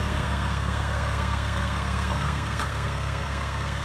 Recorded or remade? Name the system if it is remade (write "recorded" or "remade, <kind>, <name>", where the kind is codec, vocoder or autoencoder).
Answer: remade, codec, SNAC